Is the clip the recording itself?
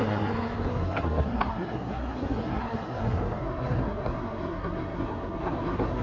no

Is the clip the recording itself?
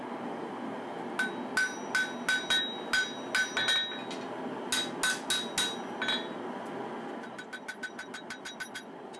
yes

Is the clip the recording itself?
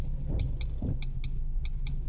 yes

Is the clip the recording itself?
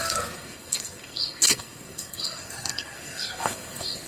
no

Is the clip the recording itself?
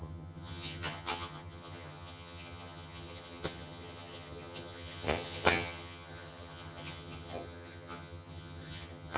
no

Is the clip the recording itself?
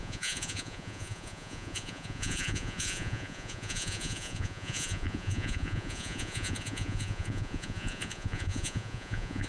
no